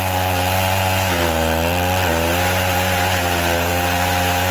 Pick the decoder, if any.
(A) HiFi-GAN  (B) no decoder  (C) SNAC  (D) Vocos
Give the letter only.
B